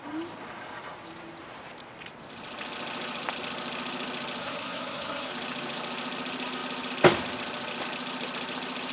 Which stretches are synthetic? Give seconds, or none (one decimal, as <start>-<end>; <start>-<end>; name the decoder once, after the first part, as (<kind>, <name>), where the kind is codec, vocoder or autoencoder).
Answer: 4.4-5.3 (codec, SNAC)